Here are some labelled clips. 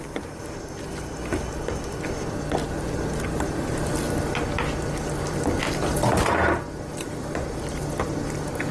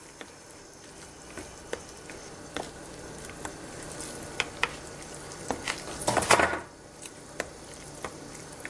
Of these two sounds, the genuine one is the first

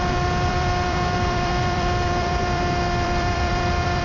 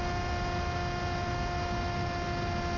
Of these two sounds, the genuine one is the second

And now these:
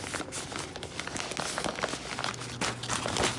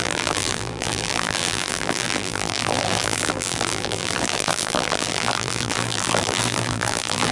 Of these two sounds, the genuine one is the first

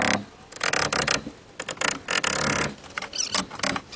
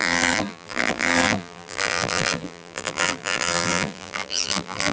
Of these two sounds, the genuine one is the first